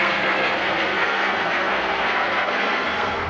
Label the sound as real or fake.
fake